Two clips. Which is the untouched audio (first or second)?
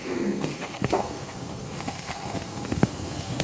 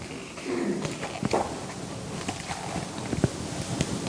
second